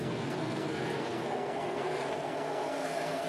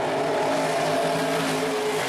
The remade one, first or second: first